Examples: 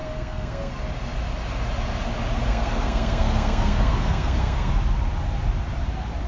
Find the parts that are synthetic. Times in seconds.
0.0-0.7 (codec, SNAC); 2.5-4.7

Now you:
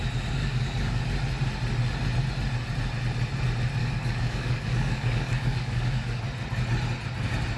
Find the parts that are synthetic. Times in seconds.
0.4-1.0 (codec, DAC); 3.8-6.2

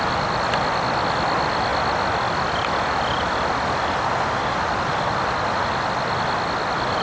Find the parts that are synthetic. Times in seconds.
none

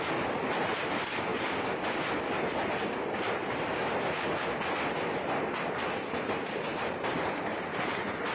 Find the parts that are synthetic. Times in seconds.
0.0-1.3 (vocoder, BigVGAN v2); 5.9-8.3

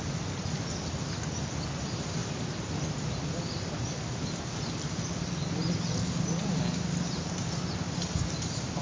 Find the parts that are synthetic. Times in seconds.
none